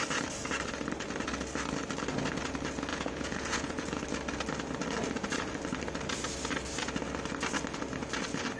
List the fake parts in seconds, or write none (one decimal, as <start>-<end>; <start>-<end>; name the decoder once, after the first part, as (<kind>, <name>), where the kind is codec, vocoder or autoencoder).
2.9-4.0 (vocoder, Vocos)